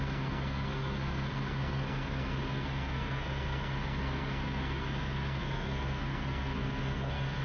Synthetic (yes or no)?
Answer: yes